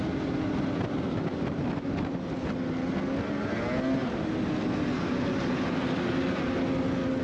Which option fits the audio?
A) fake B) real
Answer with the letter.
B